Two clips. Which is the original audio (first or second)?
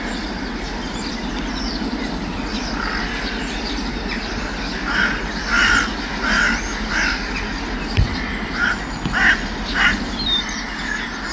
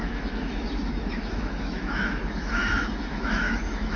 first